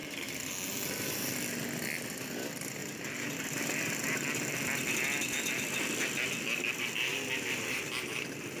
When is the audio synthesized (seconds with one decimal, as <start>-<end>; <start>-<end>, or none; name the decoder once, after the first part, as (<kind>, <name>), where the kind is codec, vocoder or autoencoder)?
0.0-0.5 (vocoder, BigVGAN v2); 2.8-7.7